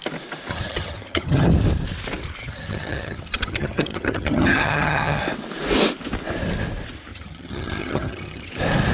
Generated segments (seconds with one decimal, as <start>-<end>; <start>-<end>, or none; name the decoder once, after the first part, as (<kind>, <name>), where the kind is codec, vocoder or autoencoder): 0.5-1.5 (vocoder, HiFi-GAN); 2.4-5.2; 7.1-8.5